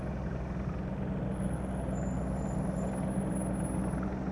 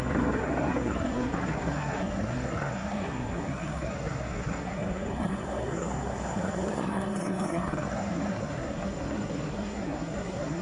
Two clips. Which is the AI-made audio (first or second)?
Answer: second